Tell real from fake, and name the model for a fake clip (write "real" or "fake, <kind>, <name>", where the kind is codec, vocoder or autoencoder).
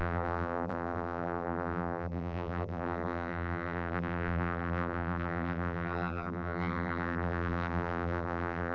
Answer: fake, vocoder, BigVGAN v2